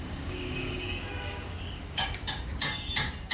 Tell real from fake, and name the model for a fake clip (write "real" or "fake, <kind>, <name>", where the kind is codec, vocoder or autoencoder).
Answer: fake, codec, DAC